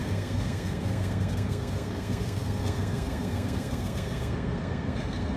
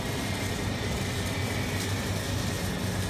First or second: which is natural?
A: second